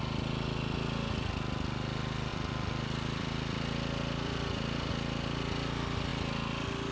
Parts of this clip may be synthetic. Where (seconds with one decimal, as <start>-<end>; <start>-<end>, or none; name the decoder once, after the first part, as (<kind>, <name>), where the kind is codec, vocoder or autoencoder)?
2.3-4.9 (vocoder, BigVGAN v2)